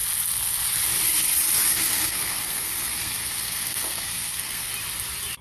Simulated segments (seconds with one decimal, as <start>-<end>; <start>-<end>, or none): 1.5-4.7